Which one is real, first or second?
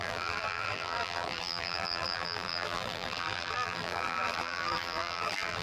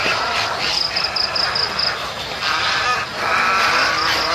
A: second